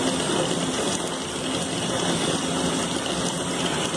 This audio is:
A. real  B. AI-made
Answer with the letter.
A